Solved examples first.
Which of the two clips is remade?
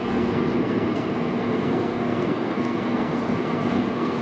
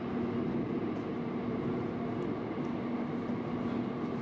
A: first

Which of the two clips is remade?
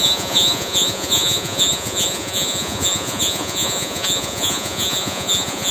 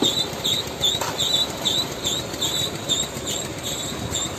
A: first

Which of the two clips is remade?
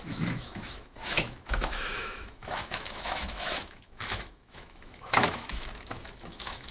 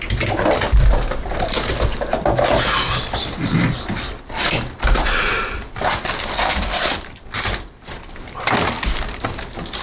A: first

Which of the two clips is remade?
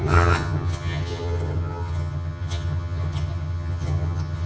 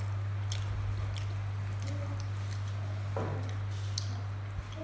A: first